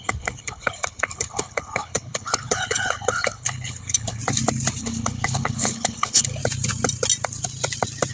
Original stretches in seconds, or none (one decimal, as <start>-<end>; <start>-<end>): 4.2-4.8; 6.4-8.1